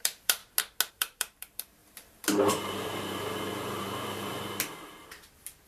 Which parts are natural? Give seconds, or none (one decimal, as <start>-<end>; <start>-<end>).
0.4-0.9